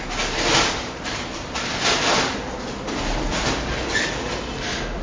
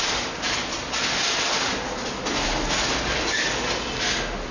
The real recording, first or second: second